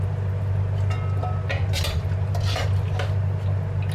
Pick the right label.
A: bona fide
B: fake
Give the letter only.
A